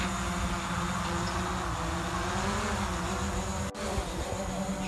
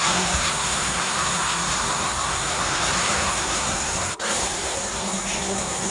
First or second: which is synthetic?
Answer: second